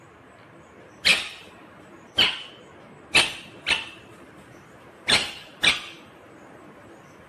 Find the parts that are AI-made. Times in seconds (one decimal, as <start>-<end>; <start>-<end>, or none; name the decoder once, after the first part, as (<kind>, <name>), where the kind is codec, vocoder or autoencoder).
1.1-2.5 (vocoder, BigVGAN v2); 3.8-4.7